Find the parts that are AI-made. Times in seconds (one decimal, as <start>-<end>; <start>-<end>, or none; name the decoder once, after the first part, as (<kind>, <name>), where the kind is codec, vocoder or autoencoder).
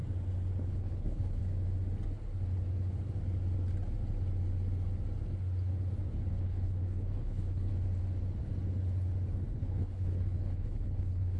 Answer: 0.7-1.4 (codec, HILCodec); 6.3-7.7; 9.5-11.4